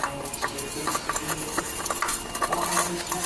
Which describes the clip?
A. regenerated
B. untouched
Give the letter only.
B